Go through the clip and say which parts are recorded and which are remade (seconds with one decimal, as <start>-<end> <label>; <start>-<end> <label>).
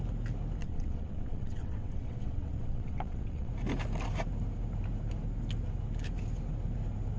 0.0-0.6 recorded; 0.6-3.5 remade; 3.5-7.2 recorded